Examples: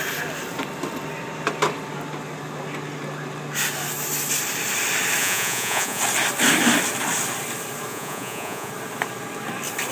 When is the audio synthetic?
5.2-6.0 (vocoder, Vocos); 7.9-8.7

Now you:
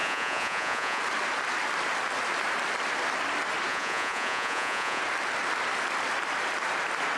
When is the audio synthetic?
0.0-1.0 (vocoder, Vocos); 3.7-5.0

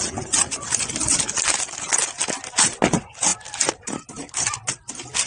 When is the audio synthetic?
none

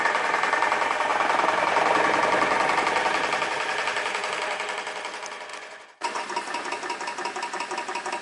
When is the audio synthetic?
5.5-6.2 (vocoder, Vocos)

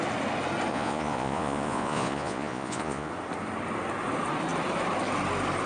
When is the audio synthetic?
0.7-3.1 (vocoder, Vocos)

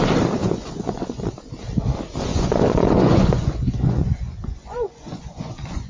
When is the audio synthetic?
0.4-1.4 (vocoder, Vocos); 2.3-5.9

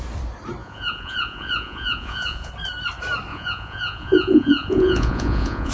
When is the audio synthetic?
0.6-2.5 (vocoder, Vocos); 3.3-5.7

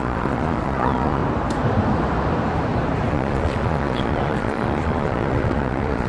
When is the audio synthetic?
0.0-1.2 (vocoder, Vocos); 3.1-6.1